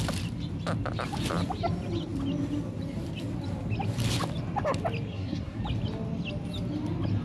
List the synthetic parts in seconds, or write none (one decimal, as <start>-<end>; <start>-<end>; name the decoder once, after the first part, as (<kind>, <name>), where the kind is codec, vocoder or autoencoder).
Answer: 5.1-5.6 (codec, SNAC)